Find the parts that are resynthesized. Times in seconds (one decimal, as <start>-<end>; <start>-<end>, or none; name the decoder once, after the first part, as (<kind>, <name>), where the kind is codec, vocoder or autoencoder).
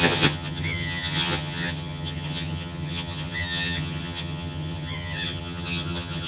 0.0-6.3 (vocoder, HiFi-GAN)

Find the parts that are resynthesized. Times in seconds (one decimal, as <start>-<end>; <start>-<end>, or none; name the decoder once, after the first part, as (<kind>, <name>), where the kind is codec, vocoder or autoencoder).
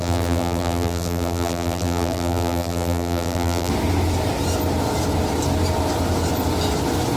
0.0-3.7 (vocoder, BigVGAN v2)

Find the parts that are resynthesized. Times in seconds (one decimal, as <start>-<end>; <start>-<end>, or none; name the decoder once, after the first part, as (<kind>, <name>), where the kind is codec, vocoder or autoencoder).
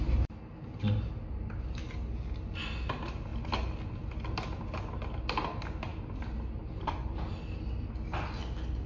none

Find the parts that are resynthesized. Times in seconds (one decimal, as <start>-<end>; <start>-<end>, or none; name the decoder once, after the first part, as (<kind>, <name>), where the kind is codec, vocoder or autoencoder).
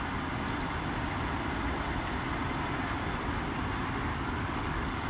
4.1-5.1 (codec, DAC)